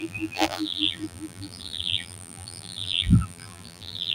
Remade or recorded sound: remade